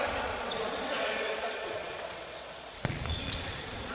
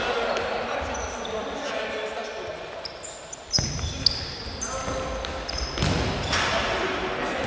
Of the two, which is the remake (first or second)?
first